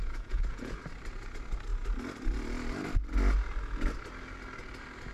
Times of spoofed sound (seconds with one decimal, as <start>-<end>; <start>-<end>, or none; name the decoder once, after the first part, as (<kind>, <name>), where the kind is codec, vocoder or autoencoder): 0.0-0.8 (vocoder, Vocos)